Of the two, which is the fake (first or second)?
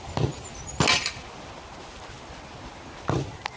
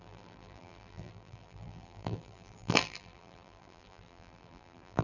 second